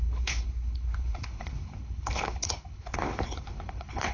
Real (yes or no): no